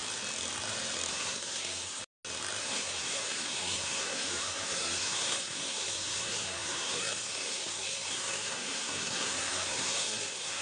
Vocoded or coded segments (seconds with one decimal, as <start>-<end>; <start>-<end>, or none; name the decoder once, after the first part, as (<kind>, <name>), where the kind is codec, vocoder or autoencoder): 1.1-2.0 (codec, SNAC); 2.6-10.6